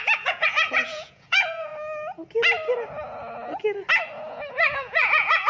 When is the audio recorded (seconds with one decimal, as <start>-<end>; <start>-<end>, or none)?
1.7-4.3